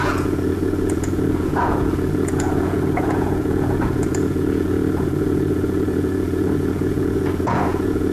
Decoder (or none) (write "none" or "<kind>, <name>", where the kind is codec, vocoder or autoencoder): vocoder, Vocos